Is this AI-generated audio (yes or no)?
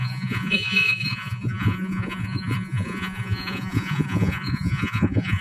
yes